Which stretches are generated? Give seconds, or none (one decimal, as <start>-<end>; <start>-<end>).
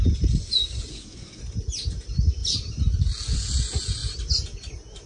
0.9-1.4